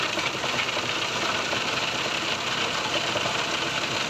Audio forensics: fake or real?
real